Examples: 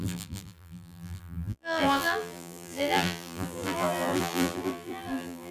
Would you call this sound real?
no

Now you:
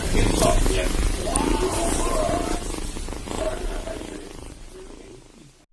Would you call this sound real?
yes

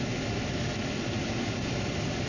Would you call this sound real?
yes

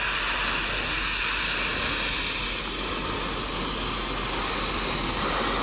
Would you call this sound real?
yes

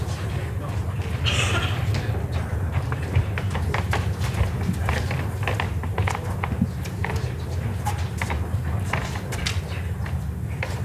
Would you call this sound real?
yes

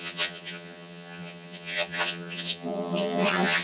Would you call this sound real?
no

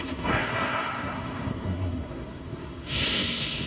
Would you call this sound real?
no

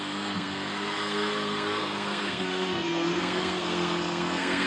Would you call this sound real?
no